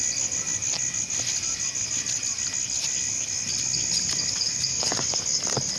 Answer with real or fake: real